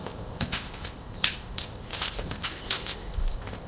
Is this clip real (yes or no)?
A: no